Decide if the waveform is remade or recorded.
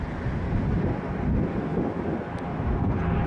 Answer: recorded